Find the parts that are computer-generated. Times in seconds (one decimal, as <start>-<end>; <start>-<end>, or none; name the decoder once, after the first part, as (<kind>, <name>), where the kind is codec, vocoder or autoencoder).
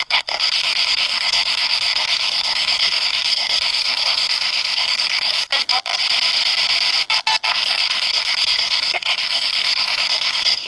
0.0-5.5 (codec, SNAC); 7.5-10.7